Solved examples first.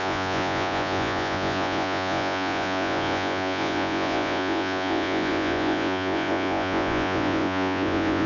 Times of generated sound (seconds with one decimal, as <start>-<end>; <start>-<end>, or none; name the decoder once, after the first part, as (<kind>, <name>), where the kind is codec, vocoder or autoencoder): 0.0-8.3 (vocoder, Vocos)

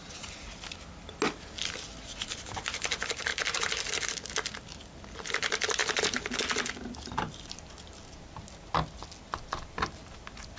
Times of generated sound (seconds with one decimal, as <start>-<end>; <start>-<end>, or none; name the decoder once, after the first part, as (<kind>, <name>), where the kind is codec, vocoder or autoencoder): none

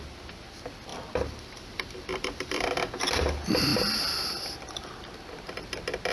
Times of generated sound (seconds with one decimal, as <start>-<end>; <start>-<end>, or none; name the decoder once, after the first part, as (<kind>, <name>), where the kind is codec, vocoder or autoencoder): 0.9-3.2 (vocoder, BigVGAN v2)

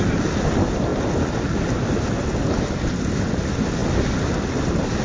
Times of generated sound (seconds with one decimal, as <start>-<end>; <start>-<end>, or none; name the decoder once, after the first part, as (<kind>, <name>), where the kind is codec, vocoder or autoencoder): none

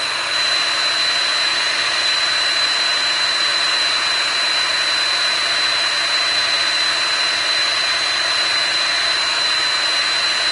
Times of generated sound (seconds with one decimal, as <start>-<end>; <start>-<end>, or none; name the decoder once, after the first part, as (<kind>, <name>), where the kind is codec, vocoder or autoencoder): 1.5-2.2 (vocoder, BigVGAN v2)

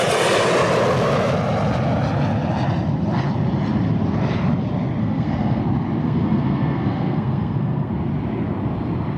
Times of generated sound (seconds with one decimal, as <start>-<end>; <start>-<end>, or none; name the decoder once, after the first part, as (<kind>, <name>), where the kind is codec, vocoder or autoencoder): 5.0-5.6 (codec, SNAC); 6.0-7.9